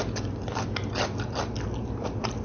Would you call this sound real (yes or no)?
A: yes